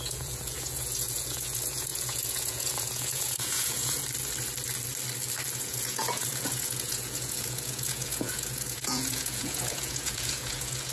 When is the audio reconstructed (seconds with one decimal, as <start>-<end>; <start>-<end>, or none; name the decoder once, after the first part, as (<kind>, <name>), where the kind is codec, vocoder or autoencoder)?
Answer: 0.0-4.0 (vocoder, Vocos); 5.6-10.9